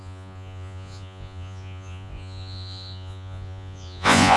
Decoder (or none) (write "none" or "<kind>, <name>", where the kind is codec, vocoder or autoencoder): vocoder, Vocos